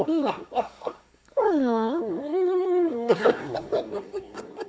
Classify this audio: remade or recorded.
remade